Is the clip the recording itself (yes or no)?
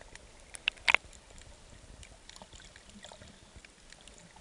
yes